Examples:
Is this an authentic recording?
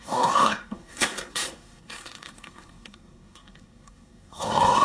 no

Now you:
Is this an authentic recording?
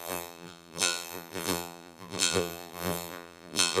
no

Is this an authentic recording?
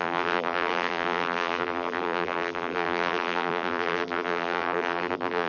no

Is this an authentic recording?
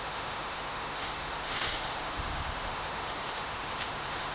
no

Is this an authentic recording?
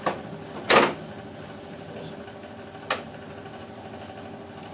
yes